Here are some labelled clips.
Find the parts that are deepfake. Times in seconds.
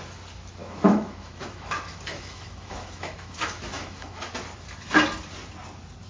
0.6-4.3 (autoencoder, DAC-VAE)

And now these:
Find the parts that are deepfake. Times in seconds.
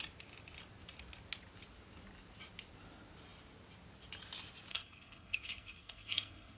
4.7-6.6 (codec, SNAC)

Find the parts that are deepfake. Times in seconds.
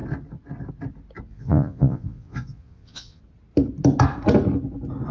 1.3-3.2 (vocoder, Vocos)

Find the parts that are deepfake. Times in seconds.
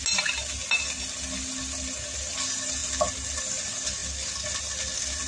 none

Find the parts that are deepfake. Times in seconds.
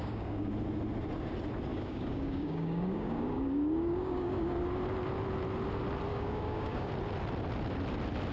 0.0-0.5 (codec, DAC); 1.7-4.6; 6.1-6.9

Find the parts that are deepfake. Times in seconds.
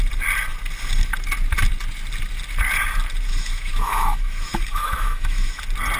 3.3-5.6 (autoencoder, DAC-VAE)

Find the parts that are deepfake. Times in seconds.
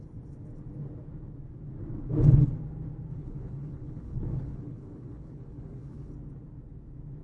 3.1-6.1 (codec, HILCodec)